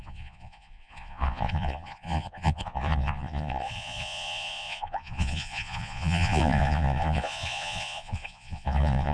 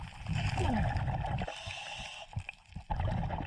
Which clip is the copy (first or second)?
first